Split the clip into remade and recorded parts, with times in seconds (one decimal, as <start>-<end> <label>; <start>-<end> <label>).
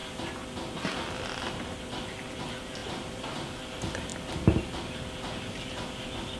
0.0-6.4 recorded